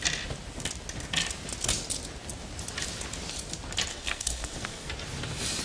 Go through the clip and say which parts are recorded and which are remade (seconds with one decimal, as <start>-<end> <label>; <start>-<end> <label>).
0.0-3.9 recorded; 3.9-4.9 remade; 4.9-5.6 recorded

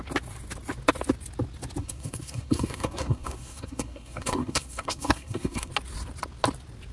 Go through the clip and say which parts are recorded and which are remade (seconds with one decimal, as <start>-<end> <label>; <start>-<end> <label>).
0.0-1.8 recorded; 1.8-5.7 remade; 5.7-6.9 recorded

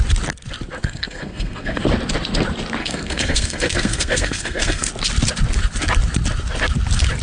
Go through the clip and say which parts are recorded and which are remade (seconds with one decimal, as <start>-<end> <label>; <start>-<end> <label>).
0.0-0.8 recorded; 0.8-1.8 remade; 1.8-2.8 recorded; 2.8-4.9 remade; 4.9-7.2 recorded

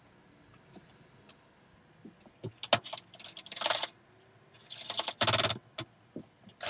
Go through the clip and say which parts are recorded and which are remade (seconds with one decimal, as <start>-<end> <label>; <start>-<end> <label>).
0.0-6.7 recorded

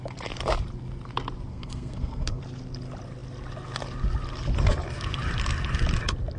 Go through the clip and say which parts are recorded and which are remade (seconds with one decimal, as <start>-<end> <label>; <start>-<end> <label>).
0.0-1.5 recorded; 1.5-2.4 remade; 2.4-6.4 recorded

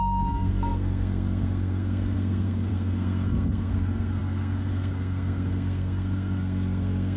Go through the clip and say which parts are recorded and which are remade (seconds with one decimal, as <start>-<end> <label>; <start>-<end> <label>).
0.0-7.2 remade